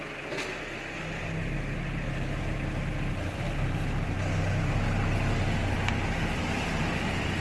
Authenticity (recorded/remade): recorded